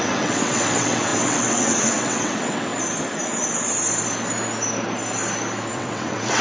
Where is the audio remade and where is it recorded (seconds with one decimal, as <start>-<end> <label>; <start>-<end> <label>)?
0.0-2.7 remade; 2.7-5.7 recorded; 5.7-6.4 remade